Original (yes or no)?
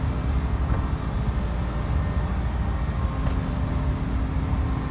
yes